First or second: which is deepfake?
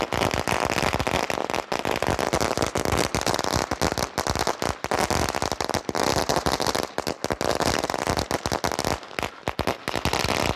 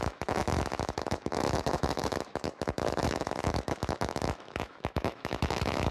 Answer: second